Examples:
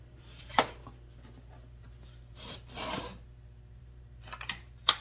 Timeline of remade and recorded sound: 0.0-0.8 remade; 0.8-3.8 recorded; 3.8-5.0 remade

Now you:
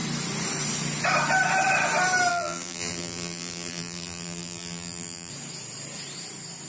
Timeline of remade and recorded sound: 0.0-2.3 recorded; 2.3-5.3 remade; 5.3-6.7 recorded

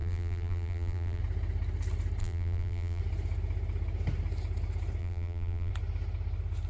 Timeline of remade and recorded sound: 0.0-1.2 remade; 1.2-2.2 recorded; 2.2-3.0 remade; 3.0-5.0 recorded; 5.0-5.7 remade; 5.7-6.7 recorded

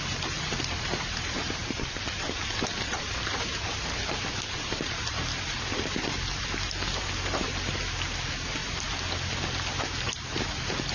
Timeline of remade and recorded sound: 0.0-8.6 remade; 8.6-9.4 recorded; 9.4-10.9 remade

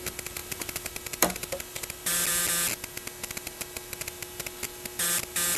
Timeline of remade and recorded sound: 0.0-0.4 recorded; 0.4-0.9 remade; 0.9-5.6 recorded

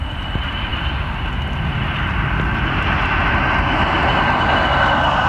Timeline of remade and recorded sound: 0.0-5.3 recorded